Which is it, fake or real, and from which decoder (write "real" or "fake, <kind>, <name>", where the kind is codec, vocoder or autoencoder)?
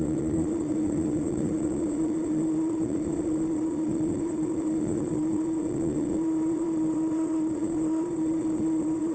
fake, vocoder, Vocos